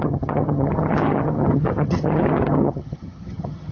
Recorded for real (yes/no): no